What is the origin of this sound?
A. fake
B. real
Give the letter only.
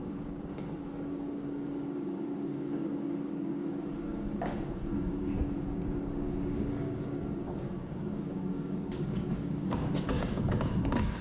A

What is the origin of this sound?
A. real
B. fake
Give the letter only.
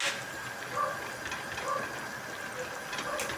A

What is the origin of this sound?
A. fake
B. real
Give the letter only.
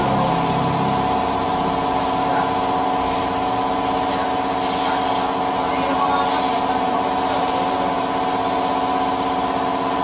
B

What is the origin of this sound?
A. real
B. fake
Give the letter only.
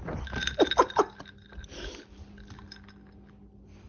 A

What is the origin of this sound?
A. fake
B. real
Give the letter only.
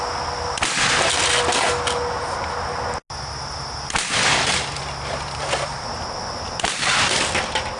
B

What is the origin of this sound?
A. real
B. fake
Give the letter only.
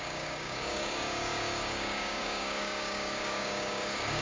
B